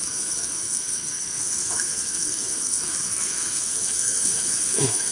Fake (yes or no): yes